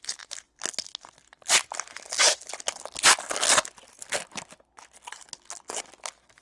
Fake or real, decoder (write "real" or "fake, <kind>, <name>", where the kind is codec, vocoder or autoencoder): real